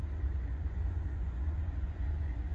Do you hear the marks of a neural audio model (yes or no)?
yes